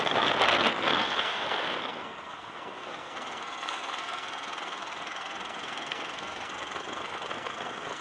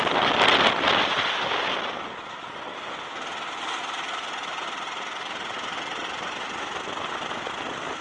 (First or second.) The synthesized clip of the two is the first